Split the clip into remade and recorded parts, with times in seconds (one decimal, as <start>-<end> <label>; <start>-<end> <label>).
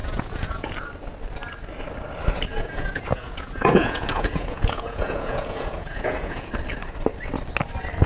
0.0-0.7 remade; 0.7-2.5 recorded; 2.5-6.5 remade; 6.5-8.1 recorded